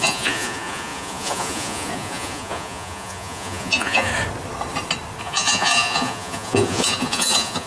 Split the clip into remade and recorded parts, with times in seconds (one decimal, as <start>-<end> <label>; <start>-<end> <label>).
0.0-4.1 remade; 4.1-5.2 recorded; 5.2-7.7 remade